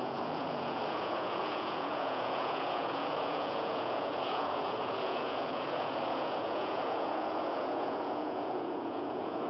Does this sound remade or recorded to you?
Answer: remade